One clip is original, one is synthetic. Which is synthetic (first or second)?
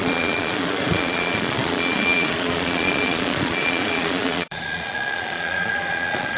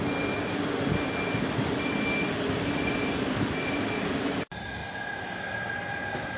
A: first